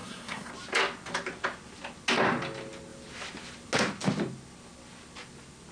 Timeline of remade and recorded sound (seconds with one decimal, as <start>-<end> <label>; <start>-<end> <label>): 0.0-0.5 remade; 0.5-5.7 recorded